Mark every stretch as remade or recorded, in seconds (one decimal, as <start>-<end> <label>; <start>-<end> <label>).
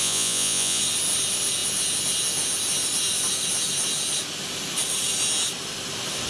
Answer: 0.0-0.8 remade; 0.8-6.3 recorded